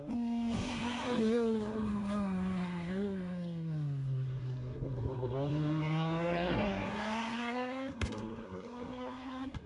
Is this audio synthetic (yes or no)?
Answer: yes